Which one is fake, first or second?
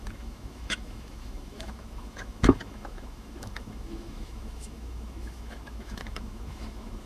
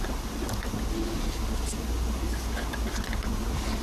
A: first